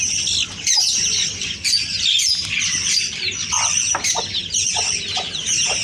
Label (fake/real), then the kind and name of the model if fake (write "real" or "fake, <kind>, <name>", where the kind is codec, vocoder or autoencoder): real